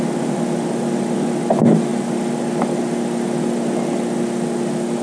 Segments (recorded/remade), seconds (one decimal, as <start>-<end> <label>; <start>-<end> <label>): 0.0-5.0 recorded